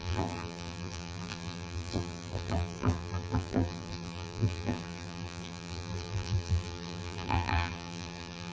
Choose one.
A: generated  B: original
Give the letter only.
A